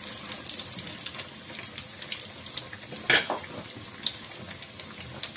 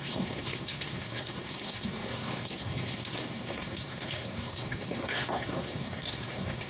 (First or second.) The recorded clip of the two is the first